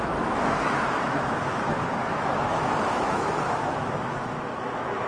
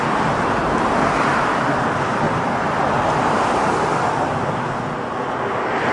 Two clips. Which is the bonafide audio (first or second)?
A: second